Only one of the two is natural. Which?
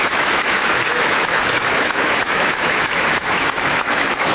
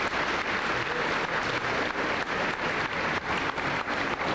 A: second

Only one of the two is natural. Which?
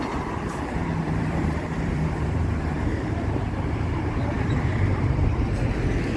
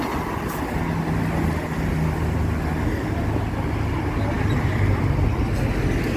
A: second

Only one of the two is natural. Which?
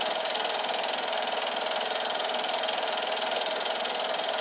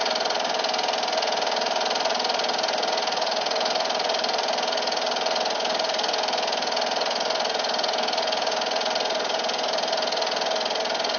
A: second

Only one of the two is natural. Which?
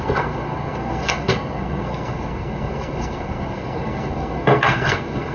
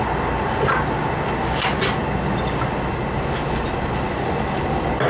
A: second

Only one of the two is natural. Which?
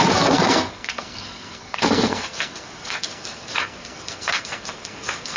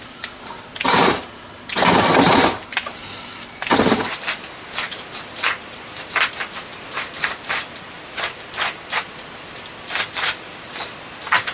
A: second